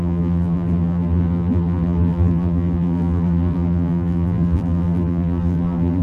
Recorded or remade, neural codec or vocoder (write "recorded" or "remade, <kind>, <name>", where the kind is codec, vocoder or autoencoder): remade, vocoder, BigVGAN v2